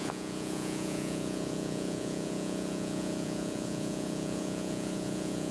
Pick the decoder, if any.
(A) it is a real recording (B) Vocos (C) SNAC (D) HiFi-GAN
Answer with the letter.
B